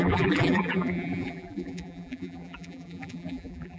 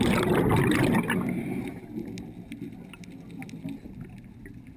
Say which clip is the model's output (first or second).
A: first